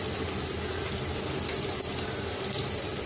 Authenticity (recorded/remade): recorded